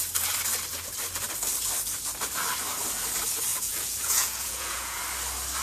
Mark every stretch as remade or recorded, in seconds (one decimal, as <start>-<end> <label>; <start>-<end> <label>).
0.0-3.5 recorded; 3.5-5.0 remade; 5.0-5.6 recorded